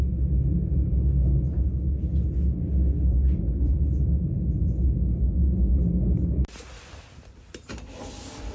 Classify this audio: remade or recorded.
recorded